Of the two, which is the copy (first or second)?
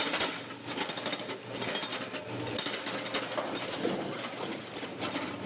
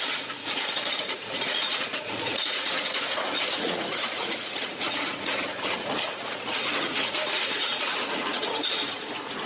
second